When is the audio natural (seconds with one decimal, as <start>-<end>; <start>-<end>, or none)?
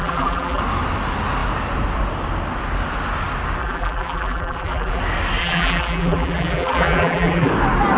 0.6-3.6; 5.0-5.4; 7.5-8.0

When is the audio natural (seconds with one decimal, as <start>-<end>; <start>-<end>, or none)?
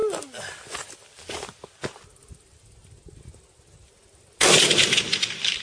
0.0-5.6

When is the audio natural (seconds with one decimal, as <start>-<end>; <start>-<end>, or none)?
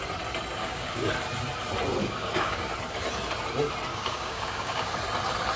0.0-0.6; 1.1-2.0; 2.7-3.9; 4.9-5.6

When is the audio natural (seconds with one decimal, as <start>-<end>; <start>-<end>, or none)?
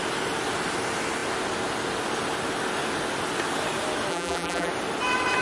0.0-4.1; 4.7-5.4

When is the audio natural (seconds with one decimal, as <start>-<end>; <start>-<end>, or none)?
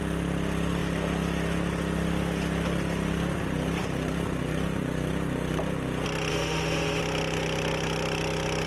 0.0-6.3; 7.0-8.7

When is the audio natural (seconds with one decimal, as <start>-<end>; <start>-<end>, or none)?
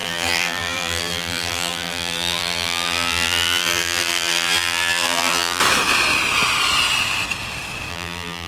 5.6-7.9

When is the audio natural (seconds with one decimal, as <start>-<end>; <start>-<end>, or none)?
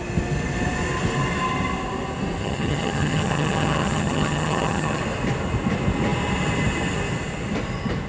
0.0-2.4; 5.0-8.1